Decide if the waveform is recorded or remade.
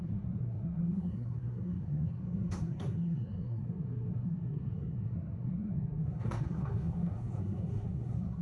remade